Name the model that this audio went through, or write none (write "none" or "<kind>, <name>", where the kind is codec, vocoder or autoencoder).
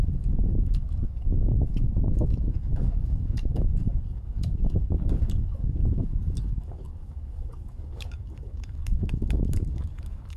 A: codec, DAC